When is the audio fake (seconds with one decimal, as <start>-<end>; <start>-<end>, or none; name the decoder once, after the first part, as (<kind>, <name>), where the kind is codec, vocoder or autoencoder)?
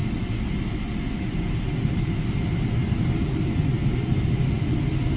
none